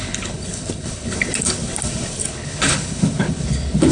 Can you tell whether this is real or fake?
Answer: fake